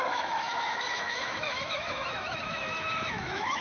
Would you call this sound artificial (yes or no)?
yes